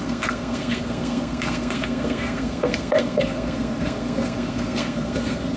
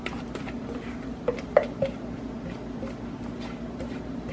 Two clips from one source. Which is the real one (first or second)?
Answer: second